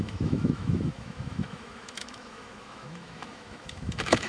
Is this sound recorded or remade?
remade